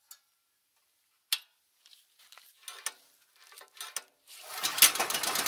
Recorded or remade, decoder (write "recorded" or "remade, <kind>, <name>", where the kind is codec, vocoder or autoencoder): recorded